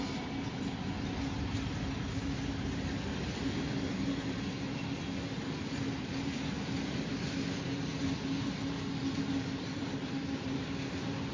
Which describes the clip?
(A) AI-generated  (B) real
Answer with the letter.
B